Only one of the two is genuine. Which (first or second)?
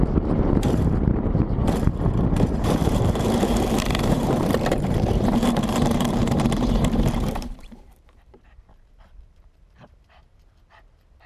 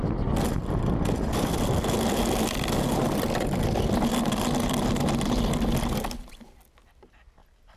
second